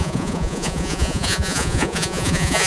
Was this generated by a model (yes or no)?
yes